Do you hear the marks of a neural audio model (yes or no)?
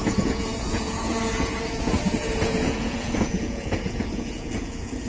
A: yes